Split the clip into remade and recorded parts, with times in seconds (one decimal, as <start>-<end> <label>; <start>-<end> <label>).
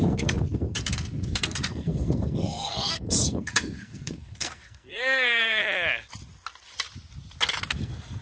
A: 0.0-5.6 remade; 5.6-7.7 recorded; 7.7-8.2 remade